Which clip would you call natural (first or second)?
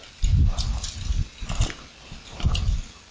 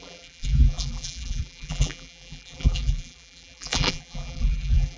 first